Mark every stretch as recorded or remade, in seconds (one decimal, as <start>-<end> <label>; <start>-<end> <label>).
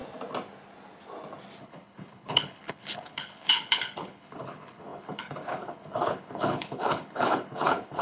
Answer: 0.0-1.6 recorded; 1.6-8.0 remade